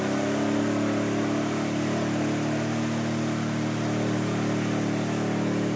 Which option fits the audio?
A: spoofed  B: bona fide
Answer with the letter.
B